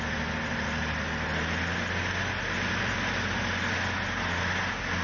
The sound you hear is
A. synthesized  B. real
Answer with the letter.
B